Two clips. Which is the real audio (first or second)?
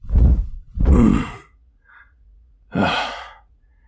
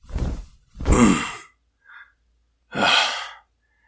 second